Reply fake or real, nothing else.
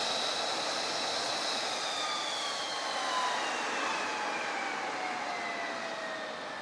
real